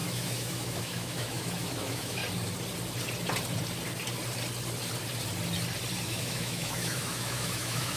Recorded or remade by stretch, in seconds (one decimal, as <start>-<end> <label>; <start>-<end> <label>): 0.0-2.2 remade; 2.2-6.0 recorded; 6.0-8.0 remade